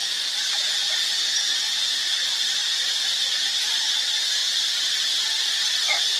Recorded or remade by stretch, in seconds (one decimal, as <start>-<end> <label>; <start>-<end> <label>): 0.0-6.2 recorded